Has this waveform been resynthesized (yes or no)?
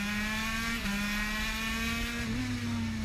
no